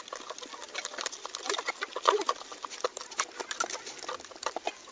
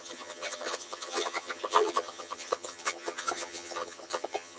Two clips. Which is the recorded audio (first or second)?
first